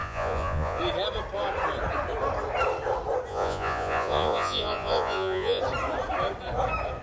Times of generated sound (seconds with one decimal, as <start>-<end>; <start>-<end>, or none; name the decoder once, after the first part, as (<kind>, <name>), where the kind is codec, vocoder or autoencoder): 0.0-0.8 (vocoder, Vocos); 3.3-5.6